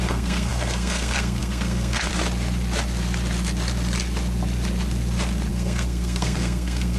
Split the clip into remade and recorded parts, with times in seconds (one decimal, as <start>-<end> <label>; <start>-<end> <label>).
0.0-2.1 remade; 2.1-5.5 recorded; 5.5-7.0 remade